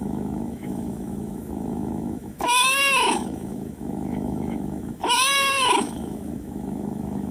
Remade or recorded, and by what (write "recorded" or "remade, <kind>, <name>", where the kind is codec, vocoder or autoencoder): remade, autoencoder, DAC-VAE